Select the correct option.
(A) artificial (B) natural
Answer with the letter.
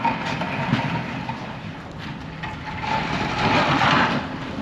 B